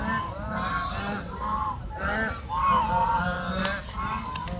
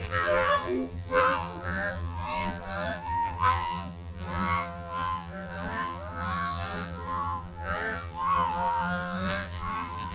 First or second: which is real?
first